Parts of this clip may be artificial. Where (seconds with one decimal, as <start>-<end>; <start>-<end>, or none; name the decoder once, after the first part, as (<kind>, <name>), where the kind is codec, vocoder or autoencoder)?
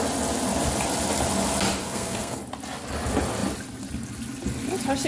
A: 1.8-2.4 (codec, SNAC)